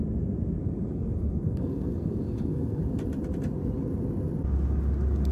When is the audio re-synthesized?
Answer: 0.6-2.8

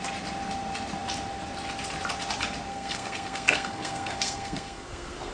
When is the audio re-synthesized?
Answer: 2.7-5.3

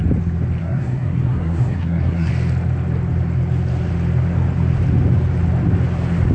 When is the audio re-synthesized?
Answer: 0.6-2.3

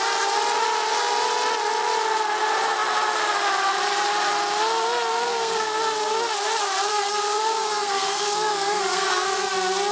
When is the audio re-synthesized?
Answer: 5.1-5.8; 6.9-9.4

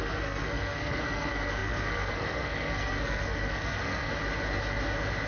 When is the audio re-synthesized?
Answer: 0.0-4.1

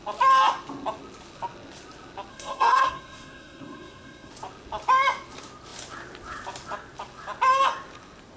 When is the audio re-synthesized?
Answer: 2.3-4.3

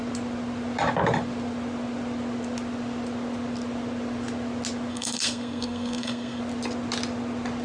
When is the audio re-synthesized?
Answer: 4.9-6.4